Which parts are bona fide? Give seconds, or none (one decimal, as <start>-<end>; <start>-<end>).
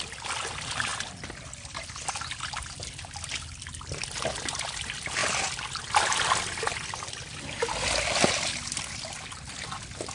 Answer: 0.0-10.1